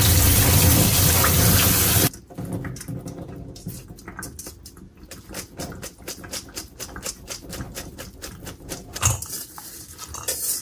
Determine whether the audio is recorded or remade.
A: recorded